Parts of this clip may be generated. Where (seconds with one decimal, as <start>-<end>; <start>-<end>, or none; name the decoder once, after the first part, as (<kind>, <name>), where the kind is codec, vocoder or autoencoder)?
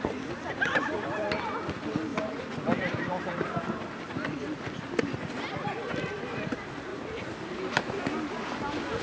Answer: none